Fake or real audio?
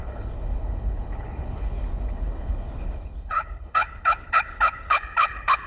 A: fake